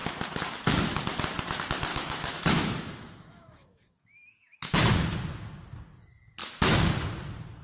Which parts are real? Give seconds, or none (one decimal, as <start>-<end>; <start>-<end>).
0.0-1.9; 5.0-6.4; 6.9-7.6